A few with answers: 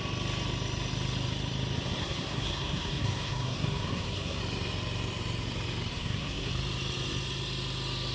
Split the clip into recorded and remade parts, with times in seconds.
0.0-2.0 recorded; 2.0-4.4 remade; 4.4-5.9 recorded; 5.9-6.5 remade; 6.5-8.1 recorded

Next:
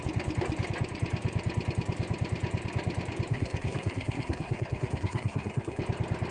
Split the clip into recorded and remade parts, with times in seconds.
0.0-3.3 recorded; 3.3-5.8 remade; 5.8-6.3 recorded